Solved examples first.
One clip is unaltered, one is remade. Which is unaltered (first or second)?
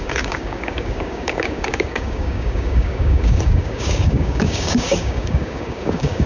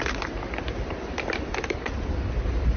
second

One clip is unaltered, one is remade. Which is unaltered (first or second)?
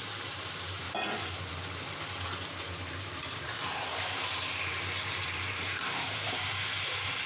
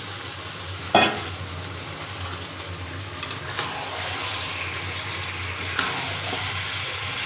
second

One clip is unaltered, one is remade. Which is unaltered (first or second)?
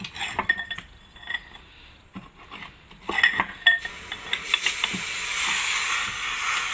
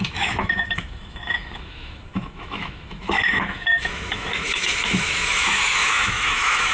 first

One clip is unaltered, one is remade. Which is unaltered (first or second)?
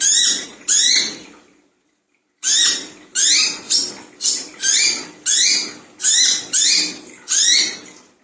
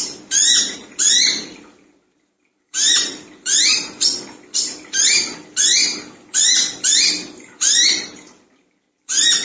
first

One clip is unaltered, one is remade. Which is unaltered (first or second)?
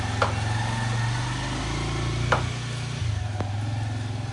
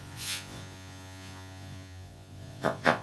first